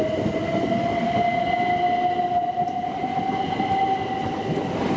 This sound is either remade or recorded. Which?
recorded